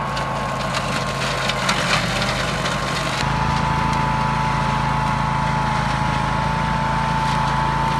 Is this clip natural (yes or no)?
yes